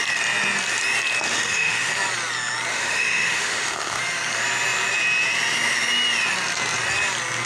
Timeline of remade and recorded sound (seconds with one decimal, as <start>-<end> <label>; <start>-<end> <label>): 0.0-1.3 recorded; 1.3-1.9 remade; 1.9-2.7 recorded; 2.7-4.0 remade; 4.0-7.5 recorded